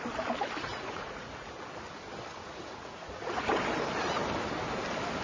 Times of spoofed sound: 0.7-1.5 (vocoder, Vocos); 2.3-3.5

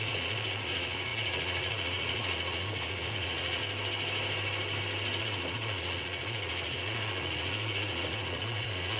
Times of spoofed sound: 0.0-3.6 (vocoder, Vocos); 5.2-9.0

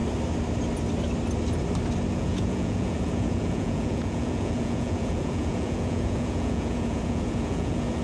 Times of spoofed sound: 2.1-8.0 (vocoder, Vocos)

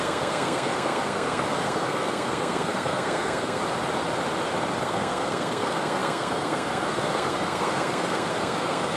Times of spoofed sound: 0.0-3.6 (codec, SNAC); 4.8-9.0

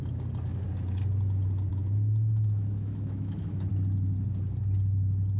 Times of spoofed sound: 1.7-3.7 (autoencoder, DAC-VAE)

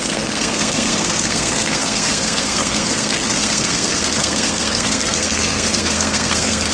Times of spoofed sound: 0.0-6.7 (codec, SNAC)